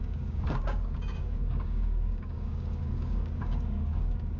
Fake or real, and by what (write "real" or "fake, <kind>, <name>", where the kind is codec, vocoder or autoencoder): fake, codec, DAC